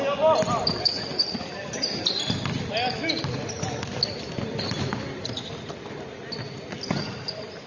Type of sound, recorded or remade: recorded